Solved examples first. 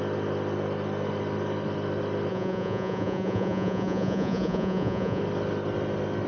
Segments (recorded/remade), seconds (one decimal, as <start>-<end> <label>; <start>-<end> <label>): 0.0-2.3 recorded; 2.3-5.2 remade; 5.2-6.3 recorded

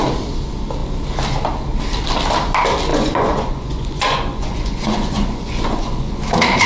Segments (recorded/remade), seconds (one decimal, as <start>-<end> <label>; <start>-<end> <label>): 0.0-2.9 recorded; 2.9-6.2 remade; 6.2-6.7 recorded

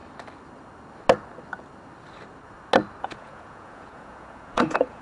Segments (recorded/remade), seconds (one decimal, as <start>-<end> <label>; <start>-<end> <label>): 0.0-3.0 recorded; 3.0-5.0 remade

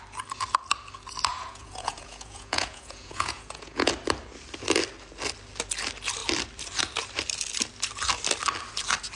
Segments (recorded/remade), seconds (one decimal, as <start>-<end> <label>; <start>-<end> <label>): 0.0-1.3 recorded; 1.3-3.9 remade; 3.9-9.2 recorded

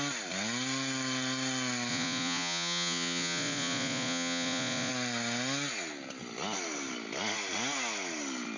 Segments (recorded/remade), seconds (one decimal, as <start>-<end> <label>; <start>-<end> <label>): 0.0-1.9 recorded; 1.9-4.9 remade; 4.9-8.6 recorded